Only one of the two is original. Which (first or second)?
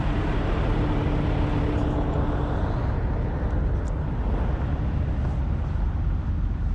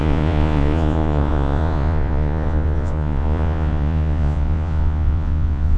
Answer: first